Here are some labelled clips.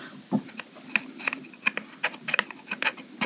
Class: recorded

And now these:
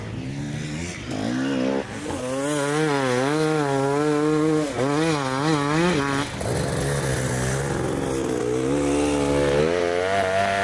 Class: recorded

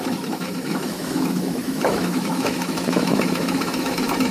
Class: remade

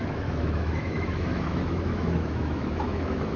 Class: remade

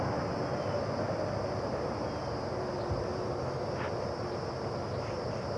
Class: recorded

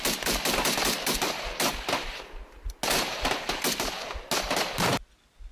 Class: recorded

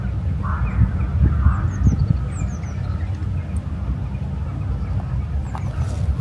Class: recorded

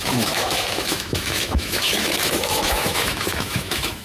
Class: remade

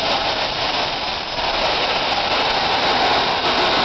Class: recorded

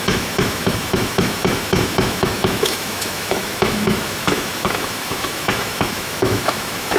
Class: remade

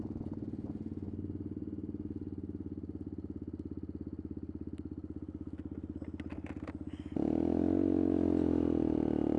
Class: recorded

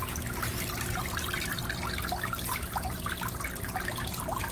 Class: recorded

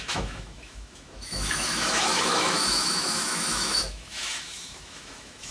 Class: remade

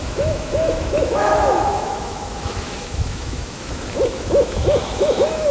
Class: remade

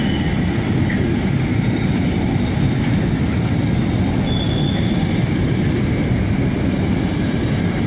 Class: recorded